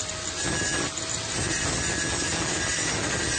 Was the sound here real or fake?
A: real